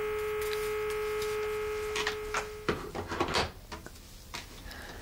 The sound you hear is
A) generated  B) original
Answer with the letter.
B